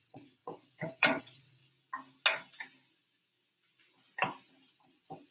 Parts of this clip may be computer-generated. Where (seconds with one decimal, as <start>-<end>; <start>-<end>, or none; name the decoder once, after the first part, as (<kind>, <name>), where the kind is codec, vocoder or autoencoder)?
0.0-1.6 (vocoder, WaveNeXt); 4.8-5.3